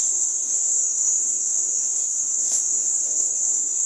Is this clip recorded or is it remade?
remade